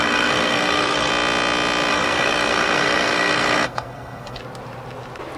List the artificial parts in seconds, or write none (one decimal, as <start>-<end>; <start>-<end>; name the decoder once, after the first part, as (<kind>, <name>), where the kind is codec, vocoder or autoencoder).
0.0-1.1 (codec, SNAC); 1.9-4.4